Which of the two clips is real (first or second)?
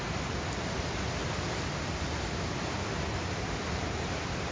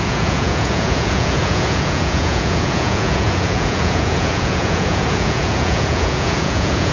first